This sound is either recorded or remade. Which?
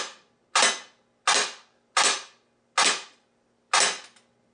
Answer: recorded